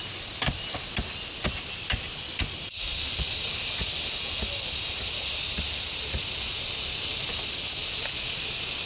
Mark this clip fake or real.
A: real